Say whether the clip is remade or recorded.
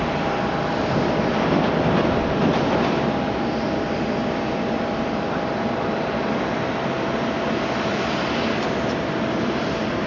remade